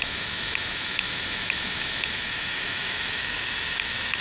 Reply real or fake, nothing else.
fake